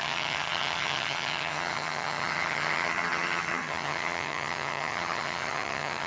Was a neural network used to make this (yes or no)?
yes